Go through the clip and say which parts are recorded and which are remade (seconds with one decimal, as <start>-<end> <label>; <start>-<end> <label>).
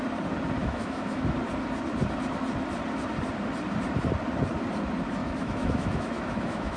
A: 0.0-0.6 recorded; 0.6-1.2 remade; 1.2-5.2 recorded; 5.2-6.8 remade